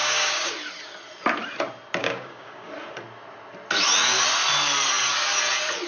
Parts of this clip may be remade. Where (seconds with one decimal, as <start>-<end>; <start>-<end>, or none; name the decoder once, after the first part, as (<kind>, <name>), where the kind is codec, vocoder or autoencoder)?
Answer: 0.0-0.5 (codec, DAC); 2.0-2.7